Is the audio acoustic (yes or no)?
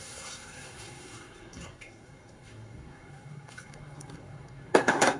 no